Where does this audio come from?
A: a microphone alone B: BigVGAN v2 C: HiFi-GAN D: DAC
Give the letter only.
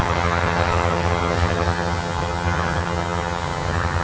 C